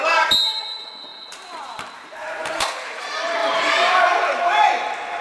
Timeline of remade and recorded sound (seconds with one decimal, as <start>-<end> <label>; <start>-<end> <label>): 0.0-1.1 recorded; 1.1-3.0 remade; 3.0-3.4 recorded; 3.4-4.0 remade; 4.0-5.2 recorded